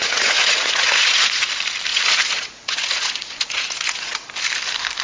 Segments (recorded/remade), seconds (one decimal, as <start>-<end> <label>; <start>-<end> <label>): 0.0-1.5 remade; 1.5-1.9 recorded; 1.9-4.3 remade; 4.3-5.0 recorded